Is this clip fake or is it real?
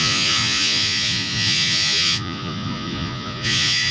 fake